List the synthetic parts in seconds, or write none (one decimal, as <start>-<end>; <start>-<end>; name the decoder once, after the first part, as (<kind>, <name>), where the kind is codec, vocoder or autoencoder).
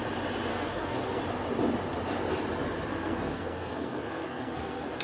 0.5-1.2 (codec, SNAC); 2.9-5.0